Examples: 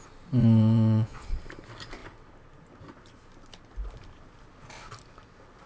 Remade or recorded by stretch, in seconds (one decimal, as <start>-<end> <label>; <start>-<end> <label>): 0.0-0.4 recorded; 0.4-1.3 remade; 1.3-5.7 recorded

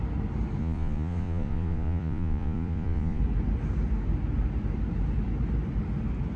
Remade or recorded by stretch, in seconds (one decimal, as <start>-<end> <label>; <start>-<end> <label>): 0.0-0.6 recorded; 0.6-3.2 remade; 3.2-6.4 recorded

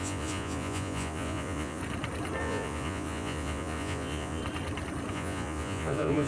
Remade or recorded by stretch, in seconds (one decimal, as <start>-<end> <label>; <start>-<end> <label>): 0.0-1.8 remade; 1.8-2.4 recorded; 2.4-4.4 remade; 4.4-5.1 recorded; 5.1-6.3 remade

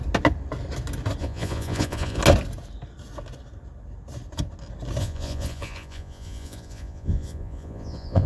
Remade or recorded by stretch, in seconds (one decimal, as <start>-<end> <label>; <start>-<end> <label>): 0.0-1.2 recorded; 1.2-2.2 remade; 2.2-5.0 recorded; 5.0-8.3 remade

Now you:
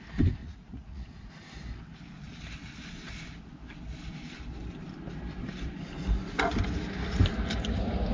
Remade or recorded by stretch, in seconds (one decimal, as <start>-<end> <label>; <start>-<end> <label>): 0.0-0.4 recorded; 0.4-1.3 remade; 1.3-8.1 recorded

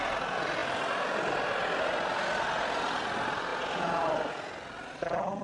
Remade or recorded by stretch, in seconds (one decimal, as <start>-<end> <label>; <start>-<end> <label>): 0.0-5.4 recorded